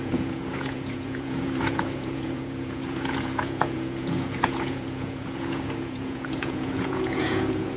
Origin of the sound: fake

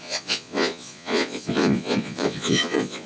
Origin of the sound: fake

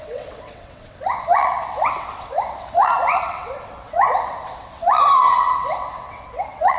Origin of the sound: fake